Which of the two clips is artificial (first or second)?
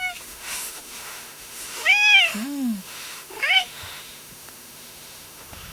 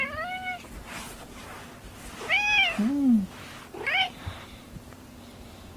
first